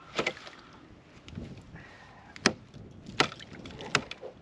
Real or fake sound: real